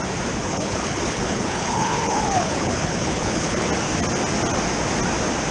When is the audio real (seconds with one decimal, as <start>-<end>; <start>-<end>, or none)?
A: 0.0-0.4; 3.7-5.5

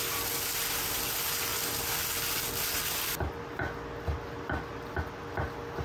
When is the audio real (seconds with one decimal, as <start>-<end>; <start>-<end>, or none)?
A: 0.0-5.8

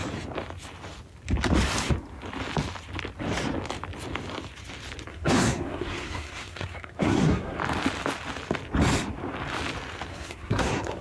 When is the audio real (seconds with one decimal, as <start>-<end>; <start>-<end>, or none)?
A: 0.0-5.1; 7.6-10.1

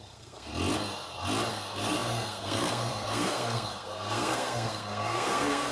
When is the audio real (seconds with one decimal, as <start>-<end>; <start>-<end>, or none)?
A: 0.5-1.5

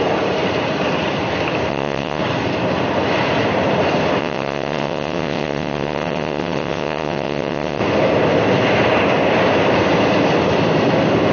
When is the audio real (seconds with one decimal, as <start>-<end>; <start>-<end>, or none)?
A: 0.0-1.7; 2.2-4.2; 7.8-11.3